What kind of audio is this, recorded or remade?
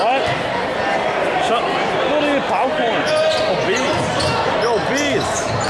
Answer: recorded